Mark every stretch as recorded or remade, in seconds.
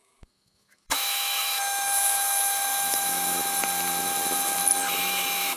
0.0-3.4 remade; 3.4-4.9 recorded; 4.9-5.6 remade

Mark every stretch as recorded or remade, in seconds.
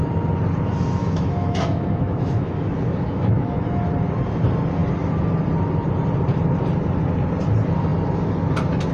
0.0-1.0 recorded; 1.0-3.8 remade; 3.8-8.9 recorded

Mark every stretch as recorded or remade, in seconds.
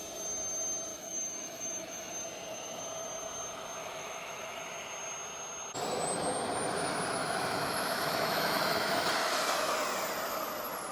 0.0-0.9 recorded; 0.9-2.1 remade; 2.1-3.8 recorded; 3.8-4.6 remade; 4.6-7.2 recorded; 7.2-9.1 remade; 9.1-10.9 recorded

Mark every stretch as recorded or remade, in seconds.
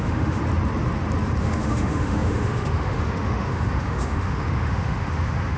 0.0-0.4 remade; 0.4-1.4 recorded; 1.4-5.6 remade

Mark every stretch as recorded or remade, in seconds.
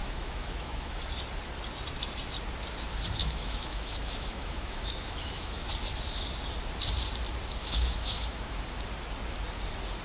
0.0-1.0 remade; 1.0-3.2 recorded; 3.2-5.7 remade; 5.7-7.6 recorded; 7.6-8.6 remade; 8.6-10.0 recorded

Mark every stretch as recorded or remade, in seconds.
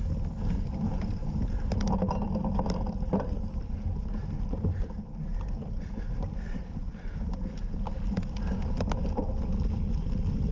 0.0-10.5 recorded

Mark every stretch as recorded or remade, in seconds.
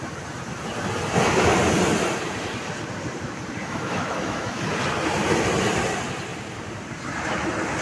0.0-3.6 recorded; 3.6-4.6 remade; 4.6-7.8 recorded